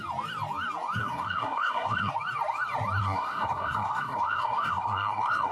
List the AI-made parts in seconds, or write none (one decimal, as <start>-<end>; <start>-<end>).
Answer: 1.0-2.1; 3.0-5.5